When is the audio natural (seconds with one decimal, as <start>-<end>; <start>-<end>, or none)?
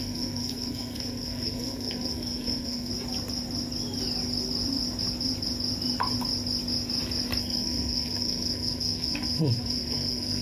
2.9-7.4